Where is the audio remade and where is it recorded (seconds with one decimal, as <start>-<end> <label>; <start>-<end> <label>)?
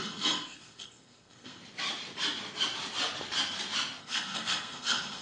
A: 0.0-1.6 remade; 1.6-4.0 recorded; 4.0-5.2 remade